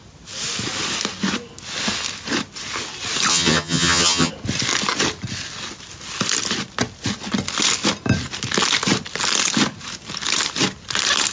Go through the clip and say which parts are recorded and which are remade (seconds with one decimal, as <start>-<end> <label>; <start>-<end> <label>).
0.0-3.3 recorded; 3.3-4.3 remade; 4.3-11.3 recorded